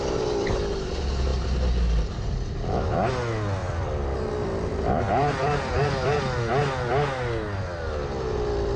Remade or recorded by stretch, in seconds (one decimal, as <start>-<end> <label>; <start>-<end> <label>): 0.0-3.6 recorded; 3.6-6.2 remade; 6.2-8.8 recorded